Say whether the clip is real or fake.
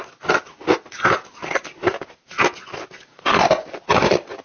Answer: real